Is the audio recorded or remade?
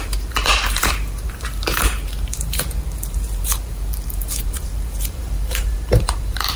remade